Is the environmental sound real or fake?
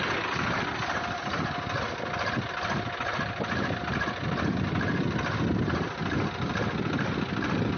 real